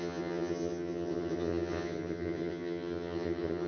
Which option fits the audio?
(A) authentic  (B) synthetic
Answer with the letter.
B